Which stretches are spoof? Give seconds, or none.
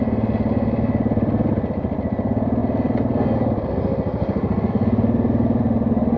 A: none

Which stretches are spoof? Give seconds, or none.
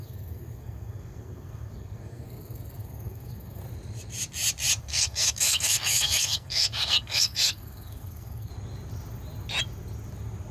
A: 0.0-3.6 (codec, SNAC); 4.8-8.5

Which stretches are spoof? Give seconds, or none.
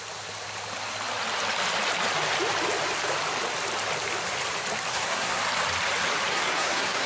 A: 4.9-5.4 (codec, SNAC); 6.3-7.1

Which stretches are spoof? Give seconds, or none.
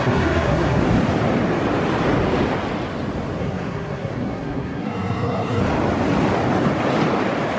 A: 0.0-0.8 (codec, SNAC); 3.4-5.6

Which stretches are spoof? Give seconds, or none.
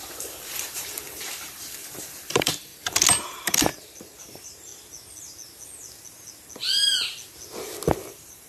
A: 0.0-2.7 (vocoder, BigVGAN v2); 3.3-4.7; 8.1-8.5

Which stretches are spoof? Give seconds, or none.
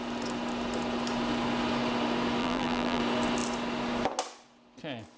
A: 2.4-3.0 (vocoder, BigVGAN v2)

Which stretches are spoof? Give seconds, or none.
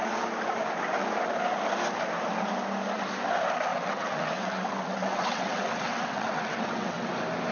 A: 3.7-7.1 (vocoder, WaveNeXt)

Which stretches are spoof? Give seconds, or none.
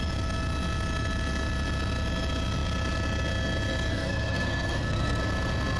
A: 3.9-5.2 (codec, SNAC)